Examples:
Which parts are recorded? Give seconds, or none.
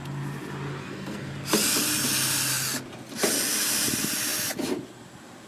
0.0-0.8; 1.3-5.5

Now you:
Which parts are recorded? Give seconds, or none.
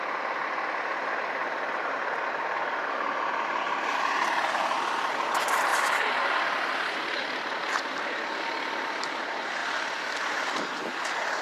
0.0-11.4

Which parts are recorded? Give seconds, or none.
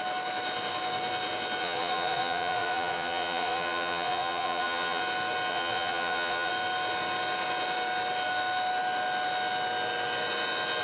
0.0-1.6; 5.0-5.5; 6.5-10.8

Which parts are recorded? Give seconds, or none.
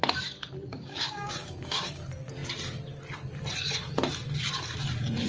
0.0-0.7; 2.0-5.3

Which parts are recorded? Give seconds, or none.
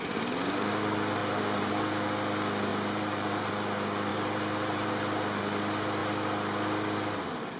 0.0-1.2; 1.7-2.7; 3.5-4.1; 5.4-7.6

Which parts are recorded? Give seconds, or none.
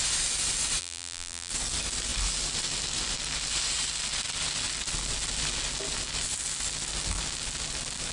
0.0-0.8; 1.5-8.1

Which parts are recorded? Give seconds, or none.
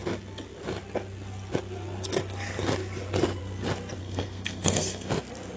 0.0-4.0; 5.1-5.6